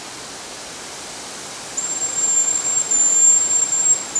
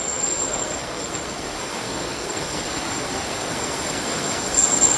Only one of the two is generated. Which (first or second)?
second